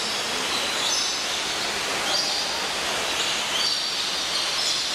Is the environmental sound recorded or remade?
recorded